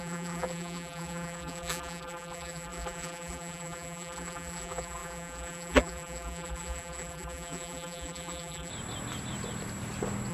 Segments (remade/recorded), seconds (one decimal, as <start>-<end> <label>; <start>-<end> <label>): 0.0-8.7 remade; 8.7-10.3 recorded